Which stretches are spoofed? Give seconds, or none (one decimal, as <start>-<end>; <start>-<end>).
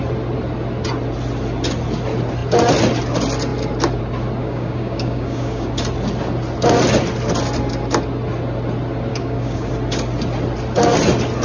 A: 4.4-5.7; 9.1-9.7